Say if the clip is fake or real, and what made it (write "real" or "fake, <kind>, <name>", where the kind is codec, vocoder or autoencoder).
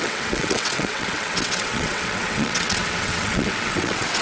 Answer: fake, vocoder, WaveNeXt